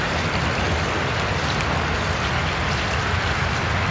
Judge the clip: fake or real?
real